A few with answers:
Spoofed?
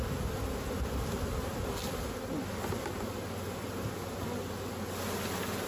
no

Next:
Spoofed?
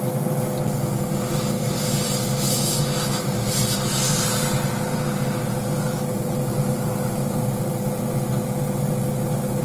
no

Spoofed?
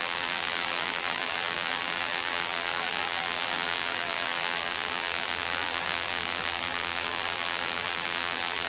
yes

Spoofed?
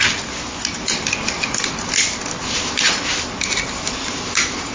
no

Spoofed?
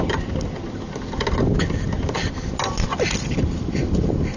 no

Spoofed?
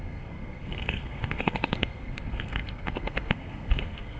yes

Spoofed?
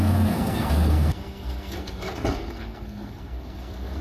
yes